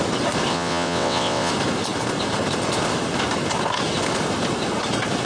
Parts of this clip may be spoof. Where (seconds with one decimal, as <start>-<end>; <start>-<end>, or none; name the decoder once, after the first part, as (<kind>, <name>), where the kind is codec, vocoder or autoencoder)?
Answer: 0.5-1.5 (vocoder, WaveNeXt)